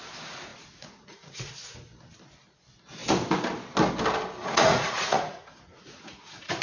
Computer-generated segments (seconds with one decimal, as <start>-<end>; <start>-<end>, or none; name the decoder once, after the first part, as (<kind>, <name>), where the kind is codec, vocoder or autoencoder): 0.5-1.5 (vocoder, Vocos); 4.4-6.6